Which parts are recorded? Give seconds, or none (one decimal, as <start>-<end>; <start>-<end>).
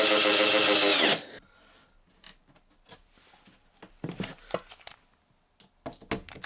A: 0.0-6.5